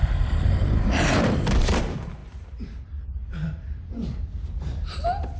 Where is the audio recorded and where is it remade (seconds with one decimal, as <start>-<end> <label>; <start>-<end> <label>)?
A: 0.0-1.8 remade; 1.8-5.4 recorded